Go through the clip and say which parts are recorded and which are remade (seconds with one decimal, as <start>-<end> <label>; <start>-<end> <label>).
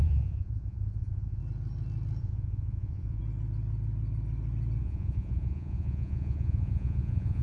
0.0-1.4 remade; 1.4-2.2 recorded; 2.2-3.2 remade; 3.2-4.8 recorded; 4.8-7.4 remade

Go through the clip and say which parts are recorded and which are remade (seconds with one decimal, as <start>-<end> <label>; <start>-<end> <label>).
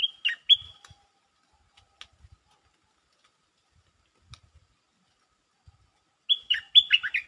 0.0-7.3 recorded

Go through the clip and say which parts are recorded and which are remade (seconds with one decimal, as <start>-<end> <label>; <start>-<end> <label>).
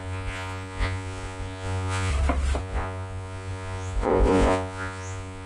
0.0-2.1 remade; 2.1-2.6 recorded; 2.6-5.5 remade